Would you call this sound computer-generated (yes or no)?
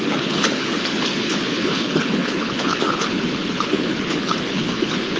yes